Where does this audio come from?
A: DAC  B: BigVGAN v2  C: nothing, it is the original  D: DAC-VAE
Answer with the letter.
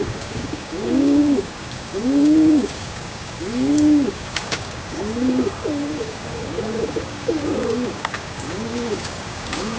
A